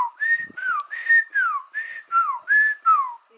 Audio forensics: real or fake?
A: real